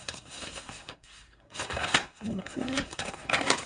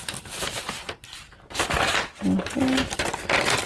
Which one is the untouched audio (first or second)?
second